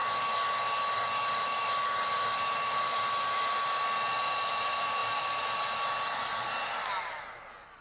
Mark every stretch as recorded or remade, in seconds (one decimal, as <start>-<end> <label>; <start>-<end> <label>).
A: 0.0-7.8 recorded